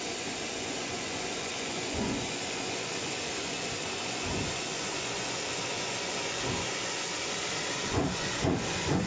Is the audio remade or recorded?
remade